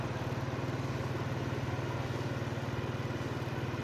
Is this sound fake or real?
real